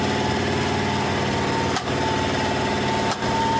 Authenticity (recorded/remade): recorded